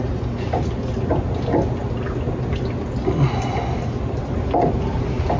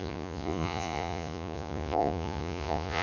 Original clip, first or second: first